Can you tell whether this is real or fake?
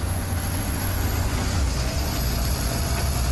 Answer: fake